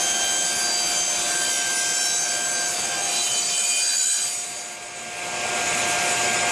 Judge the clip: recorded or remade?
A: recorded